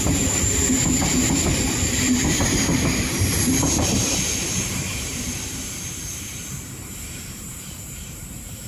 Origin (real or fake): fake